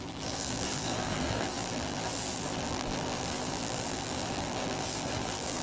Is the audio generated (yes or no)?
yes